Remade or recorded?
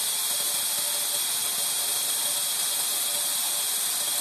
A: recorded